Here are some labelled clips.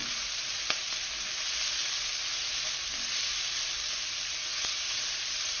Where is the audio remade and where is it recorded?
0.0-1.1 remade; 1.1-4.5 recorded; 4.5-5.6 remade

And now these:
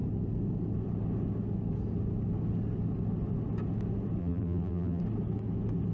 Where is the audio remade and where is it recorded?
0.0-4.2 recorded; 4.2-5.0 remade; 5.0-5.9 recorded

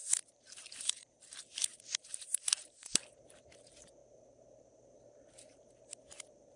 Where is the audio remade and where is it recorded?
0.0-1.2 remade; 1.2-1.7 recorded; 1.7-3.5 remade; 3.5-4.0 recorded; 4.0-5.9 remade; 5.9-6.6 recorded

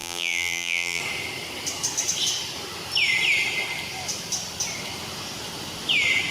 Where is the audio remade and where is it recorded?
0.0-1.0 remade; 1.0-6.3 recorded